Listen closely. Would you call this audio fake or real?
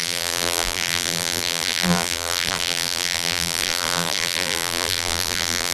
fake